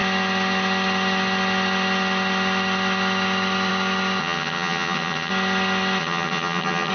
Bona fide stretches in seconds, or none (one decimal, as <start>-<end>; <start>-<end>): 0.0-4.2; 5.3-6.0